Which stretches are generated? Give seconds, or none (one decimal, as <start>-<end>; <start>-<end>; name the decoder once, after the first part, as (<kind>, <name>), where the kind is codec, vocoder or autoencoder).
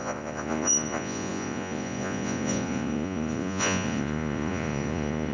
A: 0.0-5.3 (vocoder, Vocos)